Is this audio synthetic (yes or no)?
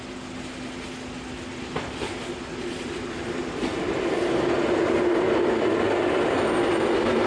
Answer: no